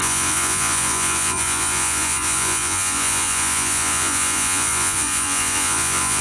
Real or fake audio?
fake